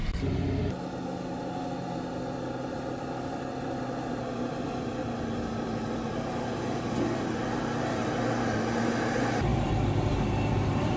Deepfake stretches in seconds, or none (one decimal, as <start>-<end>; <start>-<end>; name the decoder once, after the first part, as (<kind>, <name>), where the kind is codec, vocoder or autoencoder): 2.7-11.0 (vocoder, BigVGAN v2)